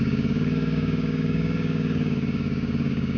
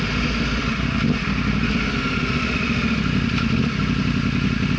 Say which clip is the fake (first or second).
first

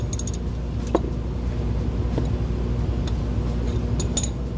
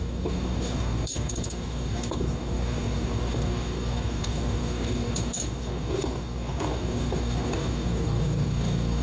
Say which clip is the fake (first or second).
second